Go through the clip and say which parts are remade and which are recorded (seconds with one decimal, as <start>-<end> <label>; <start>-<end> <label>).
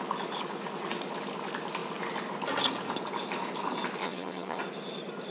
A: 0.0-4.0 recorded; 4.0-4.6 remade; 4.6-5.3 recorded